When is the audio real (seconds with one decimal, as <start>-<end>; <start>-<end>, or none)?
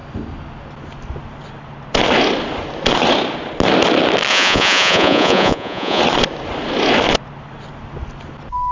0.0-4.3; 6.0-8.7